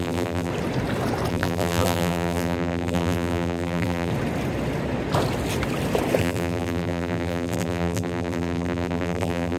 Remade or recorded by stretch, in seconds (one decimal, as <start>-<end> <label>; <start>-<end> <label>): 0.0-0.5 remade; 0.5-1.3 recorded; 1.3-4.1 remade; 4.1-6.2 recorded; 6.2-9.6 remade

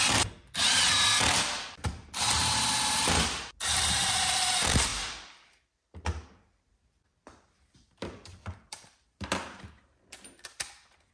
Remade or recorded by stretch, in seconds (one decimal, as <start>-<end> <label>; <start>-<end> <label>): 0.0-4.9 recorded; 4.9-9.6 remade; 9.6-11.1 recorded

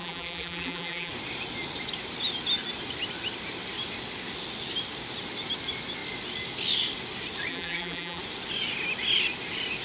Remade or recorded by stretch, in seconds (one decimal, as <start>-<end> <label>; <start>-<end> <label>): 0.0-1.1 remade; 1.1-7.5 recorded; 7.5-8.2 remade; 8.2-9.8 recorded